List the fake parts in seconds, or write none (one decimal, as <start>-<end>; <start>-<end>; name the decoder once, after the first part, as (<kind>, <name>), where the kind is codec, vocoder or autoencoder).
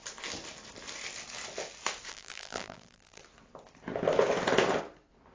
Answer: 2.1-3.2 (vocoder, BigVGAN v2)